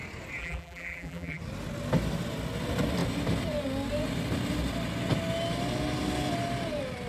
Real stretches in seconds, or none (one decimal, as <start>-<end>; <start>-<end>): 0.0-0.4; 1.4-7.1